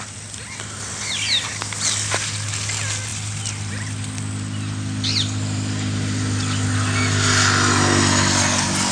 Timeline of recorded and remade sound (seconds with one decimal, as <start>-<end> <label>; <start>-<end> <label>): 0.0-8.9 recorded